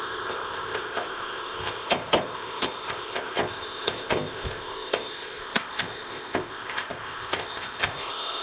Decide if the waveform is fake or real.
fake